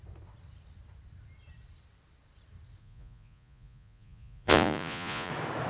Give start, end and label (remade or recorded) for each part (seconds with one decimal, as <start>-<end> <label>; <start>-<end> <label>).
0.0-2.8 recorded; 2.8-5.3 remade; 5.3-5.7 recorded